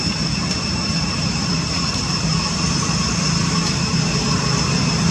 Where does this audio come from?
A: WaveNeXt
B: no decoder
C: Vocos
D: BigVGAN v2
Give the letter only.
D